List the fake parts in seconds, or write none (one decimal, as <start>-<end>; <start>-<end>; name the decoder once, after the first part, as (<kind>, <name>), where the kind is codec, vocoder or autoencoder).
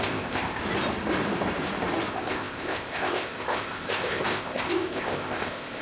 0.0-0.6 (codec, ZipCodec); 2.1-5.8